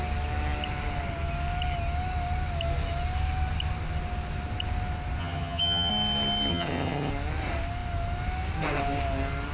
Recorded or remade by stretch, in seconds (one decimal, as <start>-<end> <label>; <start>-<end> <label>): 0.0-5.2 recorded; 5.2-5.9 remade; 5.9-6.5 recorded; 6.5-7.1 remade; 7.1-9.5 recorded